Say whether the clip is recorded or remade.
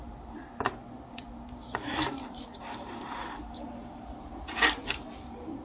remade